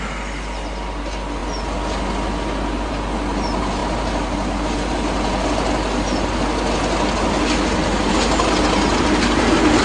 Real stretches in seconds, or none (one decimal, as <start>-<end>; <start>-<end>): 0.0-9.8